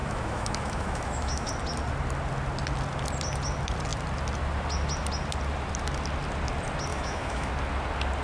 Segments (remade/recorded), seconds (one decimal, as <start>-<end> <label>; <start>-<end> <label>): 0.0-1.5 remade; 1.5-6.9 recorded; 6.9-7.5 remade; 7.5-8.2 recorded